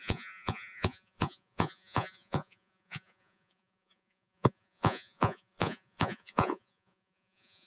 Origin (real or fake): fake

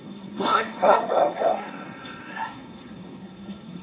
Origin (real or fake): fake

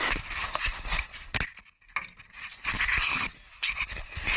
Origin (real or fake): real